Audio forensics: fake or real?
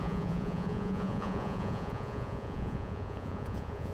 fake